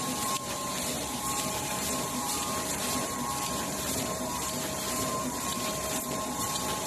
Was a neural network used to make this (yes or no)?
yes